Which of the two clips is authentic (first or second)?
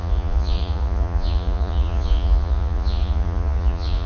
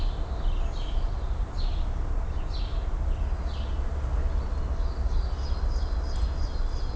second